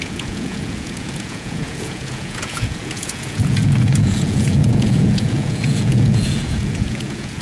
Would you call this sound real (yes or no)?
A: no